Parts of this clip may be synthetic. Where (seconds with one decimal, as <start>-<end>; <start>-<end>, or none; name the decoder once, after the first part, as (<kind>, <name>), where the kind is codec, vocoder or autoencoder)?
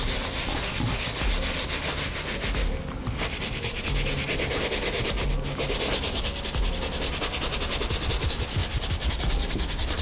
8.6-10.0 (vocoder, BigVGAN v2)